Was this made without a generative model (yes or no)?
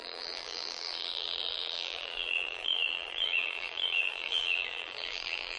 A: no